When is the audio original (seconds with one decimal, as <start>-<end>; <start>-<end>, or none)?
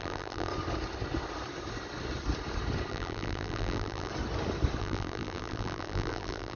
0.5-2.9; 4.1-4.8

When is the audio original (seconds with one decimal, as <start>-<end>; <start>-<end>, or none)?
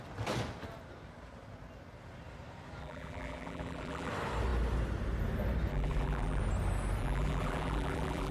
0.0-2.8; 4.1-5.7; 6.4-7.0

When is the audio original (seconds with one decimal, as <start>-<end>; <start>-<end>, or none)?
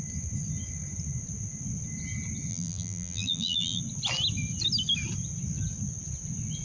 0.0-2.5; 3.8-6.6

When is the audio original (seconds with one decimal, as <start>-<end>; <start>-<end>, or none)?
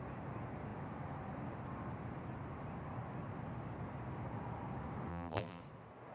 0.0-5.1; 5.6-6.1